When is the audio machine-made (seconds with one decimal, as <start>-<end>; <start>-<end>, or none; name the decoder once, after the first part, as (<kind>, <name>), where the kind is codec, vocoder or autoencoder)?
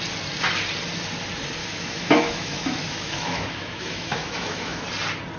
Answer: 1.6-4.8 (autoencoder, DAC-VAE)